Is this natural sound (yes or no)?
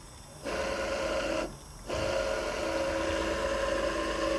yes